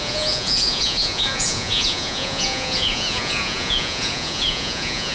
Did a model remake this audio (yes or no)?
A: yes